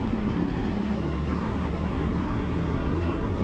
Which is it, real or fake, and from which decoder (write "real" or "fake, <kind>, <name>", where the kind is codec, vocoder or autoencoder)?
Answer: fake, codec, SNAC